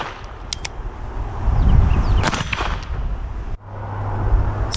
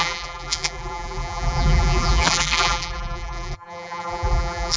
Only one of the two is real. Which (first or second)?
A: first